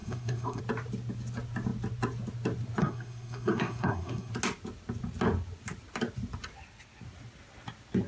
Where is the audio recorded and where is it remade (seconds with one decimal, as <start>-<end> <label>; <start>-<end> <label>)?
0.0-0.6 remade; 0.6-2.8 recorded; 2.8-4.3 remade; 4.3-8.1 recorded

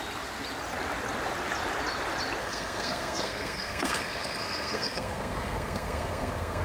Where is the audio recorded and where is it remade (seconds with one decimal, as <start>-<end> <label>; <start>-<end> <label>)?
0.0-2.4 recorded; 2.4-6.6 remade

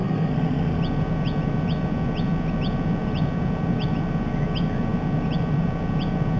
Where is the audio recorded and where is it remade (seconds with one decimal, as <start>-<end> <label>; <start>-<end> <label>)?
0.0-0.8 remade; 0.8-6.4 recorded

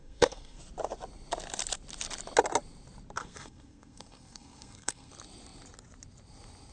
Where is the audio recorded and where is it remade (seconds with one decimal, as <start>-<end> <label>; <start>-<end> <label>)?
0.0-0.6 remade; 0.6-3.2 recorded; 3.2-5.1 remade; 5.1-6.7 recorded